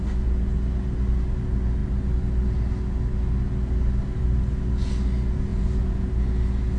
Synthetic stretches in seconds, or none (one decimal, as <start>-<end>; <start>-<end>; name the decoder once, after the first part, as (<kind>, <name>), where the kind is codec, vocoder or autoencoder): 5.5-6.1 (vocoder, Vocos)

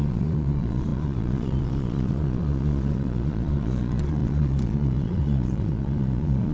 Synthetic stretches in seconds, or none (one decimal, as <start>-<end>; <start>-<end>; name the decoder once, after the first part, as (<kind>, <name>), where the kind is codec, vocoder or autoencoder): 0.0-6.5 (vocoder, Vocos)

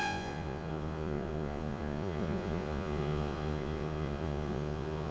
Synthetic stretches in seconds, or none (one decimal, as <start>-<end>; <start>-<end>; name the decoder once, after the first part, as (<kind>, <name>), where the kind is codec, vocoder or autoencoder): 0.0-5.1 (vocoder, Vocos)

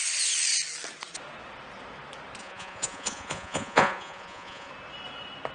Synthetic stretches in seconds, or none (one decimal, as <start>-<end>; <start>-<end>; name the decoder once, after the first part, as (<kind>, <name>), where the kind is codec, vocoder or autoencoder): 2.4-4.7 (vocoder, Vocos)

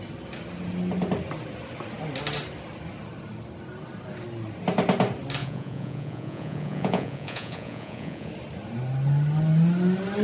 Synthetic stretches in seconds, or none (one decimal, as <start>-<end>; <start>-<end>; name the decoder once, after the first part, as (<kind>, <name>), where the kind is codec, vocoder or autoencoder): 5.4-8.3 (vocoder, Vocos)

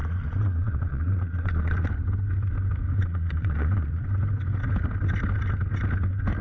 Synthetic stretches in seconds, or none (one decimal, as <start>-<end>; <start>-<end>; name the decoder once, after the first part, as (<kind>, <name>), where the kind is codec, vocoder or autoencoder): 0.0-1.9 (vocoder, Vocos); 3.0-4.1

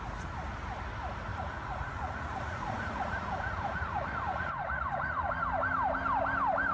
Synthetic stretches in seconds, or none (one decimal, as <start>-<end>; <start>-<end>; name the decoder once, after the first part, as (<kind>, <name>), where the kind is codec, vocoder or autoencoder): 1.3-5.3 (vocoder, Vocos)